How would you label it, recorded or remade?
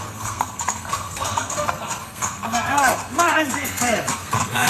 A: remade